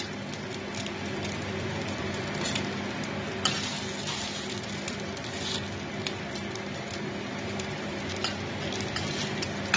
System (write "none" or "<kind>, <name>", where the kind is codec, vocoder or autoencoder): none